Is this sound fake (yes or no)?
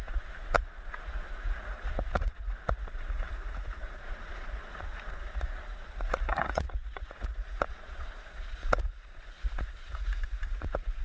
yes